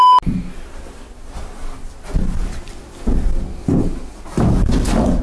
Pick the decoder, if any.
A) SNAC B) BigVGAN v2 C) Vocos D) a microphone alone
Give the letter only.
D